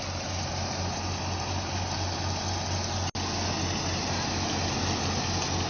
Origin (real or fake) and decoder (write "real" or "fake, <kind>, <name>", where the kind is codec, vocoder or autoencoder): real